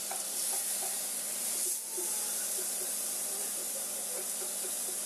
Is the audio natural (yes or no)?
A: yes